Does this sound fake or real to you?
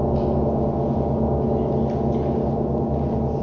real